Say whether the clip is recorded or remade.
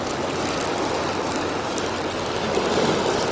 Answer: recorded